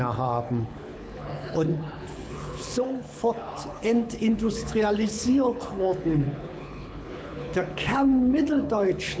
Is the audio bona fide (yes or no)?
no